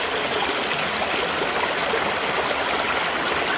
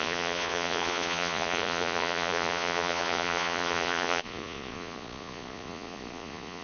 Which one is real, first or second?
first